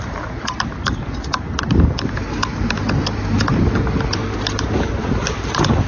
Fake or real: real